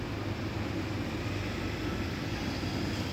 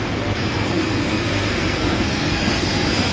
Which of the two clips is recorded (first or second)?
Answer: first